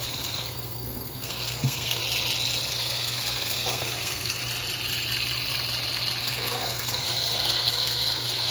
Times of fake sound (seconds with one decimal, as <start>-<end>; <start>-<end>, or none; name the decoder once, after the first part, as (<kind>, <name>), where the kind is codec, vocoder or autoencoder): 0.0-2.0 (codec, SNAC); 2.7-4.4; 6.2-8.5